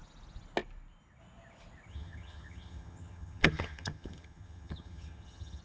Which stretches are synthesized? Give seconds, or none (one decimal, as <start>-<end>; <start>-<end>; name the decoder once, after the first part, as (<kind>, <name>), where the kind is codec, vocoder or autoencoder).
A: 1.9-5.6 (vocoder, HiFi-GAN)